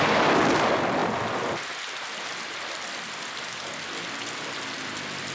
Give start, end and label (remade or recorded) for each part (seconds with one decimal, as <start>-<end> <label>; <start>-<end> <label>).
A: 0.0-1.0 remade; 1.0-4.1 recorded; 4.1-5.3 remade